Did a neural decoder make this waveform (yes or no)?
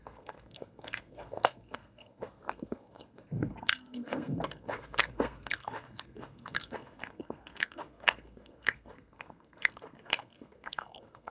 yes